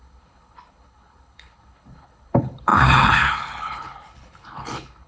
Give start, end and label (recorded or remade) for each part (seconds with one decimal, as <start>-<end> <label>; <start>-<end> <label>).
0.0-5.1 remade